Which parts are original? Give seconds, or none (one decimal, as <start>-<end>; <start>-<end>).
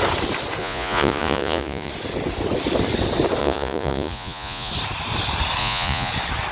0.0-0.6; 1.9-3.4; 4.7-5.6; 6.1-6.5